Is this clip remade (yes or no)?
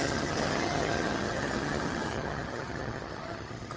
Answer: yes